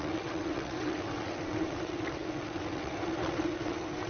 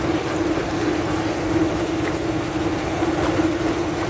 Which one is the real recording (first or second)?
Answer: second